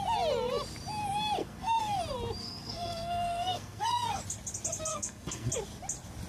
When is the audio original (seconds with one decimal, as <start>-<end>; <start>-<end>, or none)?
0.0-1.4; 2.0-2.4; 4.2-4.9; 5.5-6.3